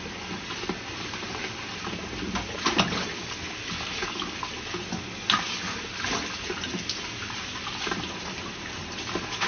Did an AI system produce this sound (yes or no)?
no